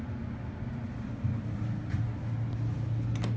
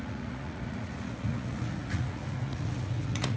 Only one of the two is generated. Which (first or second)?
second